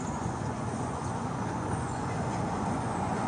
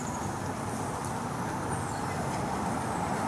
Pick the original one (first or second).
second